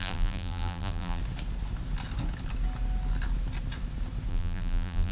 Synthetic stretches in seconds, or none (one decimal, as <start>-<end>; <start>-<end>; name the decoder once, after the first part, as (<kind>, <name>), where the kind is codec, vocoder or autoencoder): 0.0-1.2 (vocoder, BigVGAN v2); 4.3-5.1